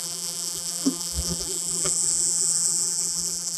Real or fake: fake